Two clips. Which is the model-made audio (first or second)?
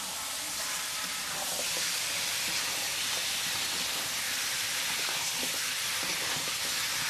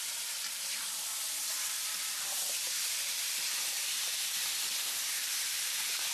second